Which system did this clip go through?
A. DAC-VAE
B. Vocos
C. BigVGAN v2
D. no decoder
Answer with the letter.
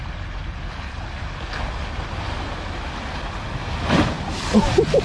D